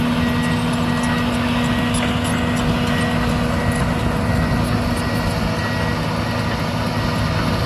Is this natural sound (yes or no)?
yes